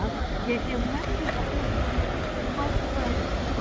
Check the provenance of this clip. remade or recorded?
recorded